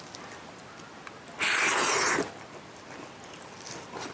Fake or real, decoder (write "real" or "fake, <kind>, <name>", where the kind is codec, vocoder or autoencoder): real